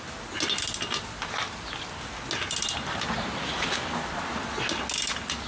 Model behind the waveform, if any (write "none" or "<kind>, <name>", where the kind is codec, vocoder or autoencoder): none